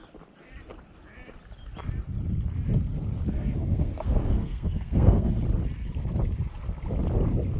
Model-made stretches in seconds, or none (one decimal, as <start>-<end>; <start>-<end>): 3.3-5.4